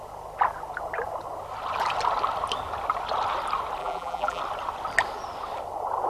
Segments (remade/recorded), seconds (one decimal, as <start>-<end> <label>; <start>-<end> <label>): 0.0-3.8 recorded; 3.8-4.4 remade; 4.4-6.1 recorded